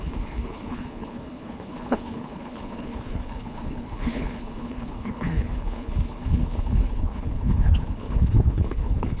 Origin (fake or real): fake